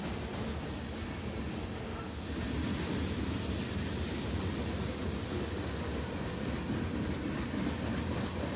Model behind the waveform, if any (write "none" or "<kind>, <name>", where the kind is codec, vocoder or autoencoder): none